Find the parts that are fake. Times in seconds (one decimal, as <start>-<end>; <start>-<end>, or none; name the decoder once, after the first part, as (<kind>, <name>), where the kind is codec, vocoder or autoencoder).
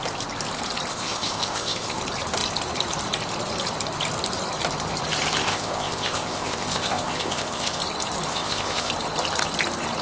0.9-2.0 (codec, ZipCodec); 5.4-7.8; 8.3-8.9